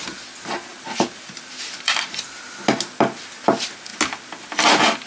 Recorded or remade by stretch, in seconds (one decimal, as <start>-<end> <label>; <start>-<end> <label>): 0.0-0.7 recorded; 0.7-2.2 remade; 2.2-5.1 recorded